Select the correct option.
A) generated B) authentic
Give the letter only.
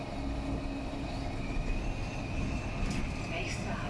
B